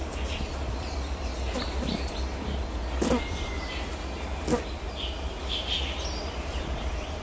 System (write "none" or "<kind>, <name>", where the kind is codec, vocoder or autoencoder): none